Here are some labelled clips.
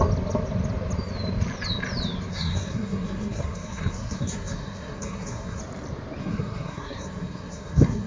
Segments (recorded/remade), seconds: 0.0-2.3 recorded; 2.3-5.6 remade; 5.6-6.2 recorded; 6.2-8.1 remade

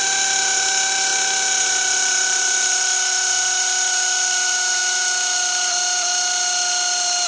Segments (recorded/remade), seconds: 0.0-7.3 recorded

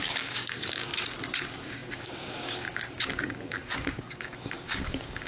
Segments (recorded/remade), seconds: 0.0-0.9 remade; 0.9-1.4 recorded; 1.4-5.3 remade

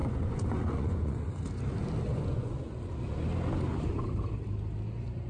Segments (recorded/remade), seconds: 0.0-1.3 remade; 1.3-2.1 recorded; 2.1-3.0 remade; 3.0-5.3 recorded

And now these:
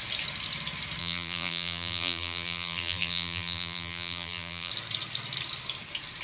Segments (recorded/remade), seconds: 0.0-1.0 recorded; 1.0-4.7 remade; 4.7-6.2 recorded

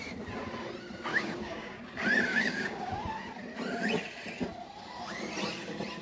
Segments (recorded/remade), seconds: 0.0-1.1 recorded; 1.1-1.8 remade; 1.8-2.3 recorded; 2.3-2.9 remade; 2.9-6.0 recorded